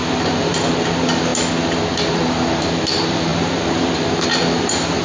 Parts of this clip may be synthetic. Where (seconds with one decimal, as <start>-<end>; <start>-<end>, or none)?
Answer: 0.0-1.3; 2.1-5.0